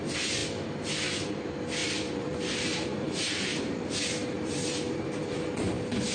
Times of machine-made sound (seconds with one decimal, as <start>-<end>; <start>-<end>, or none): 1.8-5.5